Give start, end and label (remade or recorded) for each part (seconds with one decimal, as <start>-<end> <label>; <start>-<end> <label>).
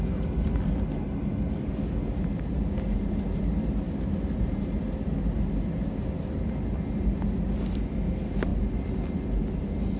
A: 0.0-10.0 recorded